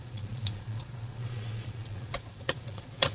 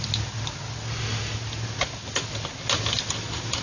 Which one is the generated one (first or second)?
first